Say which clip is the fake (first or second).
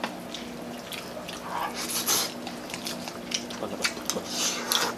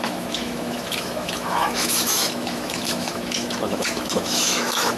second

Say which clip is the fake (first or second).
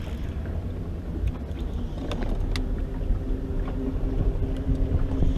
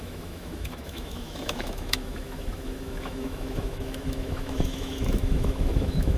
second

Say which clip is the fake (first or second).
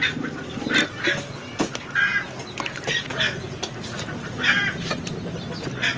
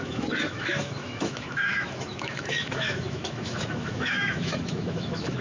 second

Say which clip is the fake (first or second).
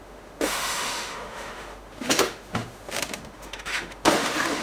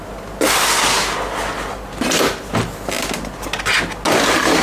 first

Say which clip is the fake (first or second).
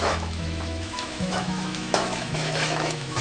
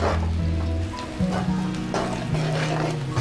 first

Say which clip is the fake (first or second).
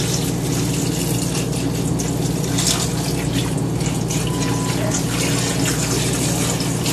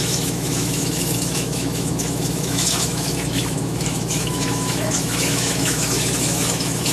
second